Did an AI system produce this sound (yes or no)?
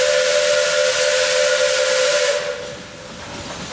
no